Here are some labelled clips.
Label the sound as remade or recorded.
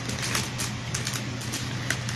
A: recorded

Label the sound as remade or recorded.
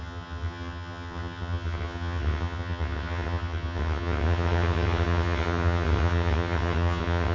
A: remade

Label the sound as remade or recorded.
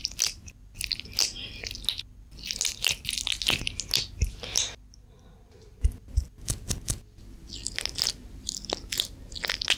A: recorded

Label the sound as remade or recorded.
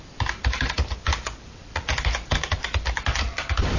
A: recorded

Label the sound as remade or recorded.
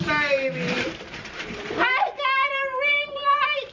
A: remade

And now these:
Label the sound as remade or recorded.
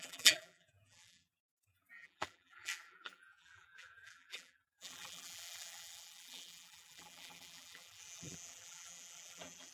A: remade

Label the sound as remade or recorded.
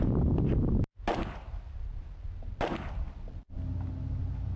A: recorded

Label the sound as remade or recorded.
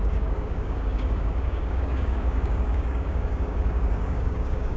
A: remade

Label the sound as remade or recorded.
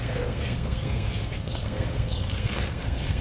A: remade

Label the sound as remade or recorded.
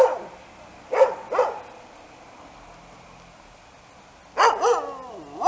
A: recorded